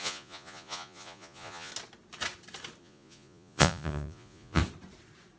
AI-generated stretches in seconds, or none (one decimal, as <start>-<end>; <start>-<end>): 0.0-1.7; 2.8-4.6

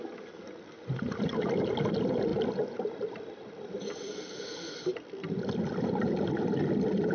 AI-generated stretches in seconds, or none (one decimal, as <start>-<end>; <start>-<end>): none